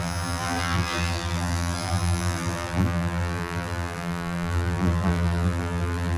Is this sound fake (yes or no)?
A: yes